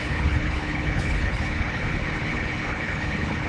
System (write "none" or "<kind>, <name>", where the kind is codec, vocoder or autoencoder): codec, HILCodec